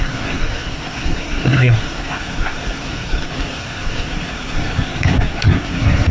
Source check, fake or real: fake